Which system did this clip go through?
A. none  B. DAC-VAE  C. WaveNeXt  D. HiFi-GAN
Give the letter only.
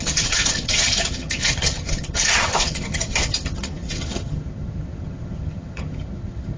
D